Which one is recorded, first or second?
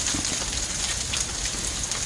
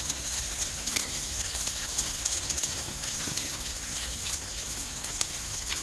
first